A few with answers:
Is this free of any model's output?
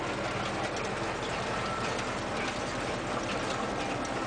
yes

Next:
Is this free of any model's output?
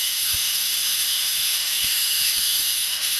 no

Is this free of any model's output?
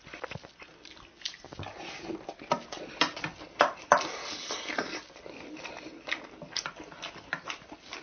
yes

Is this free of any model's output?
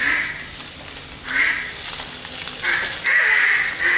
yes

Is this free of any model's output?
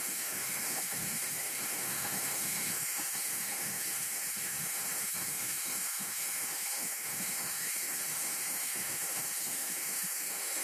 no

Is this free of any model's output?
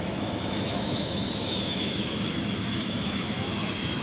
no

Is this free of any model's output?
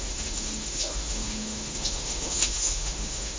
no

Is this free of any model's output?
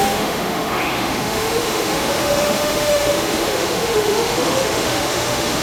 no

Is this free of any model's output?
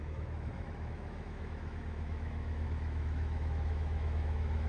no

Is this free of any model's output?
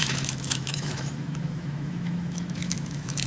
no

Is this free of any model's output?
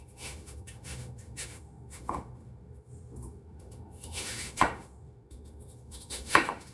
no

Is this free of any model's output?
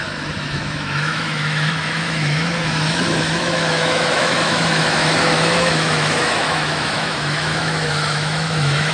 no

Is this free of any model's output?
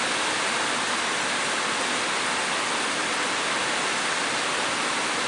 yes